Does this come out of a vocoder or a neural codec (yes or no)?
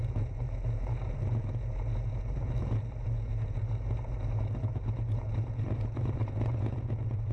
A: yes